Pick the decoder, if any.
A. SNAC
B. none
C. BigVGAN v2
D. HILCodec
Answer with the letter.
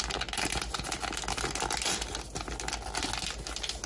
B